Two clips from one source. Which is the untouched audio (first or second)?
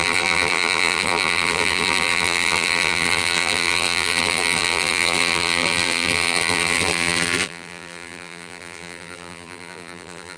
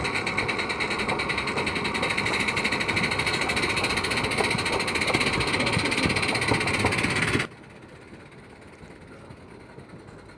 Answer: second